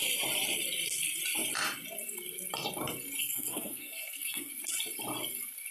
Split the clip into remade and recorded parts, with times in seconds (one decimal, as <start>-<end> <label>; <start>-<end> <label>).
0.0-3.2 recorded; 3.2-4.5 remade; 4.5-5.7 recorded